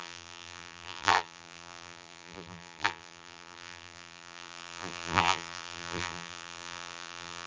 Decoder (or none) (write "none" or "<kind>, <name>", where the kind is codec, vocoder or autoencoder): vocoder, BigVGAN v2